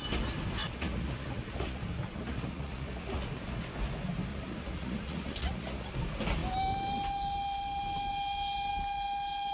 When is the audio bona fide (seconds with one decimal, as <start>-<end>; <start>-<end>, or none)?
0.0-0.6; 3.6-4.3; 5.9-9.5